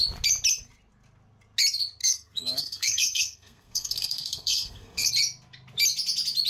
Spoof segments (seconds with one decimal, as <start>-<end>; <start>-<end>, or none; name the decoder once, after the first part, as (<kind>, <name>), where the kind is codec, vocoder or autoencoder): 2.0-5.1 (codec, SNAC)